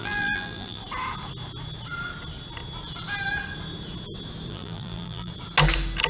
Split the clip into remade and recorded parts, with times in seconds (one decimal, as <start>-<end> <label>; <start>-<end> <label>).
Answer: 0.0-0.8 remade; 0.8-4.5 recorded; 4.5-5.3 remade; 5.3-6.1 recorded